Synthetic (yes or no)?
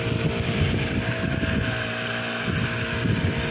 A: no